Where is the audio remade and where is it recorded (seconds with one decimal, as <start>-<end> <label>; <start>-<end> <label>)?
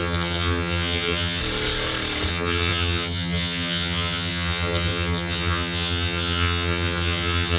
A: 0.0-1.4 remade; 1.4-2.3 recorded; 2.3-7.6 remade